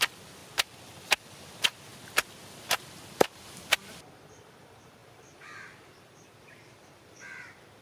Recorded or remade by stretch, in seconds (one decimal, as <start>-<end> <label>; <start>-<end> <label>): 0.0-1.9 remade; 1.9-3.9 recorded; 3.9-7.8 remade